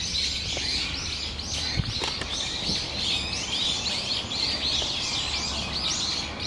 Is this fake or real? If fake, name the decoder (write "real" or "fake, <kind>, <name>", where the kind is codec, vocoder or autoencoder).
real